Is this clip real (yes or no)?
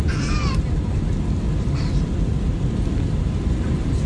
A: yes